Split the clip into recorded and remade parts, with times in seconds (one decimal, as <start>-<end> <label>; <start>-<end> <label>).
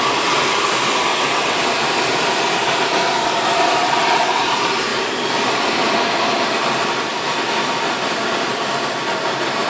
0.0-1.1 recorded; 1.1-1.6 remade; 1.6-3.8 recorded; 3.8-4.4 remade; 4.4-9.7 recorded